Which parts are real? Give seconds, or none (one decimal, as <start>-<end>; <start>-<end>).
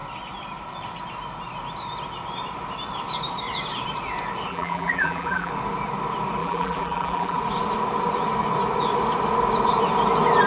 0.0-4.5; 5.5-6.4; 7.4-10.5